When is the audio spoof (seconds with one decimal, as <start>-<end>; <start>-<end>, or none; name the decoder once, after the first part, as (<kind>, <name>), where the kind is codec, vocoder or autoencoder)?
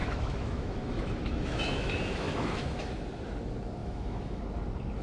0.0-3.0 (autoencoder, DAC-VAE); 3.8-4.4